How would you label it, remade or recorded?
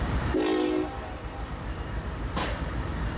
remade